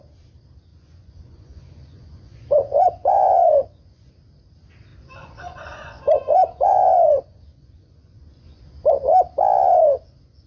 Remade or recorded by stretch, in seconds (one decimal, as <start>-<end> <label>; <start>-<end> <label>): 0.0-0.7 recorded; 0.7-4.1 remade; 4.1-4.9 recorded; 4.9-8.6 remade; 8.6-10.5 recorded